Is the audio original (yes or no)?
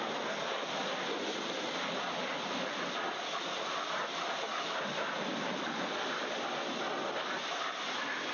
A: yes